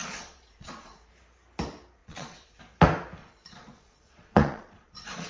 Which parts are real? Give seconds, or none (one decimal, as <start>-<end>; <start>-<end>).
1.1-2.0; 2.6-3.2